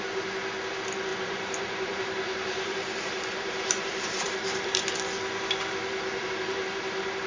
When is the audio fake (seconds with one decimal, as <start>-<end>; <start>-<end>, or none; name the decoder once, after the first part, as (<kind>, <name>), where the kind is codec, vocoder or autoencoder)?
1.1-4.9 (vocoder, BigVGAN v2); 6.2-7.3